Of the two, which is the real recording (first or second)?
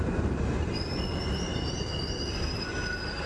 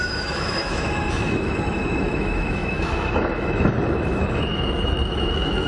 first